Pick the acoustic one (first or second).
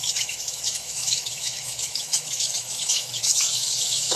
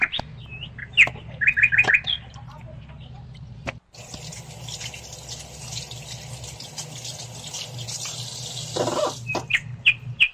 second